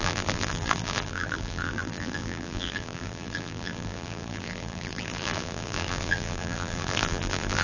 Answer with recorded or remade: remade